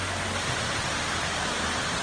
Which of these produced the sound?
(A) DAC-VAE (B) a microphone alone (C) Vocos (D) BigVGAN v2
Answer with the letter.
B